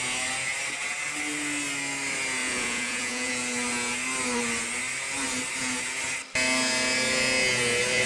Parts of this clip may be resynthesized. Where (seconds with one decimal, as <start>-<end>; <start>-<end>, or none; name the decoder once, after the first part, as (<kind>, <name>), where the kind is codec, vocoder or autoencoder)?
2.4-3.3 (vocoder, Vocos)